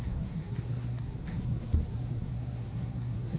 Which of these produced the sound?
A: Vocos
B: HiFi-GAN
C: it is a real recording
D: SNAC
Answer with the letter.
D